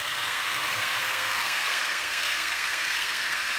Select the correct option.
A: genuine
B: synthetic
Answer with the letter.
B